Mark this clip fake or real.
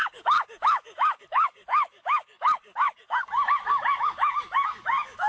fake